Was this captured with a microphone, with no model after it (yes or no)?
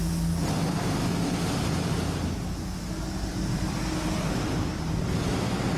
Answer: yes